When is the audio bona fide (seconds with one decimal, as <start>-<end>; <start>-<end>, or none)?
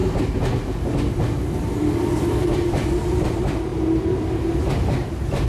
0.0-1.8